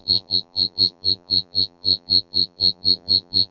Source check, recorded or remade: remade